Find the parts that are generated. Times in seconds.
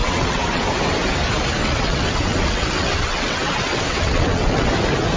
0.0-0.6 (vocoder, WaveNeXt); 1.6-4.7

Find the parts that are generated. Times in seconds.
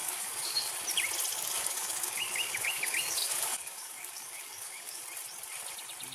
0.0-0.7 (codec, DAC); 1.3-5.0